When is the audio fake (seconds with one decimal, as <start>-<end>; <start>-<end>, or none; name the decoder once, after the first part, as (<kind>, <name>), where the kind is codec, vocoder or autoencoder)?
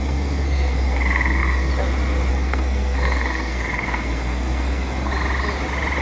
0.0-1.7 (codec, SNAC); 2.3-5.1